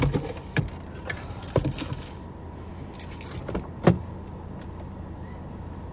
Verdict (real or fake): real